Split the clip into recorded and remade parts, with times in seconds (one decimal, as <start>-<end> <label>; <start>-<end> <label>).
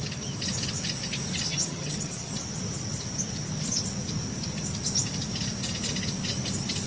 0.0-1.5 recorded; 1.5-2.3 remade; 2.3-6.9 recorded